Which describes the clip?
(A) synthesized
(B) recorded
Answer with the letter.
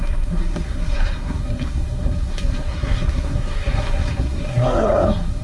A